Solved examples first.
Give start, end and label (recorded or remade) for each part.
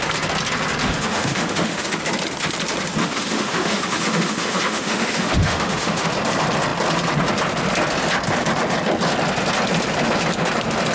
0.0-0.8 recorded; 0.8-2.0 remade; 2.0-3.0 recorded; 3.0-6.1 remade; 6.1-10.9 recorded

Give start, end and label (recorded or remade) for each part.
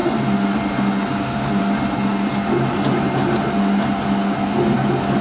0.0-5.2 recorded